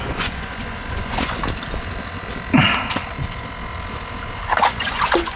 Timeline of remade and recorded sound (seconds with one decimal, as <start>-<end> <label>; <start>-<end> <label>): 0.0-1.4 remade; 1.4-4.6 recorded; 4.6-5.4 remade